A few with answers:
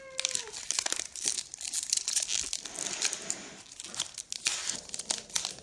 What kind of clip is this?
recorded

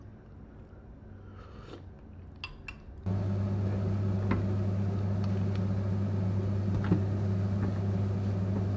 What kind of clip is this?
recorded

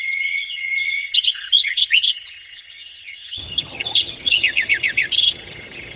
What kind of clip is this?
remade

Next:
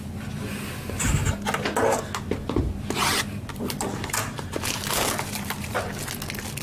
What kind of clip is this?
recorded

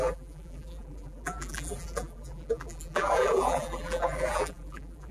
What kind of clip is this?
remade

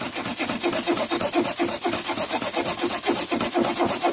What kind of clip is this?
recorded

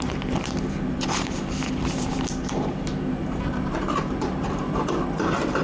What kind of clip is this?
remade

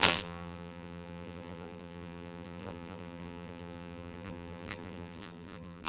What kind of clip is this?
remade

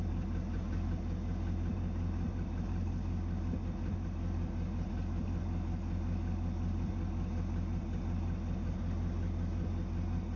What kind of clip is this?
recorded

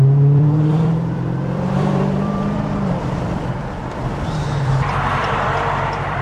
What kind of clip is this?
remade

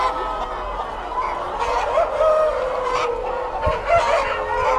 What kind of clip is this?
recorded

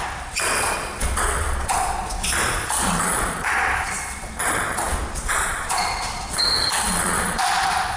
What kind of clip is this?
remade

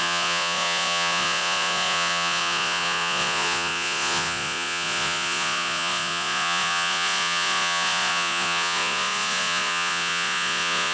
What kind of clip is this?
remade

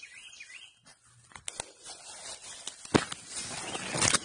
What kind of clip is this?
recorded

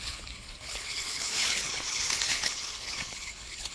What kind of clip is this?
remade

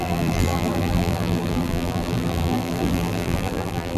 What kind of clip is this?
remade